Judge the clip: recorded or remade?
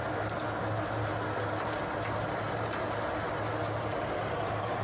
recorded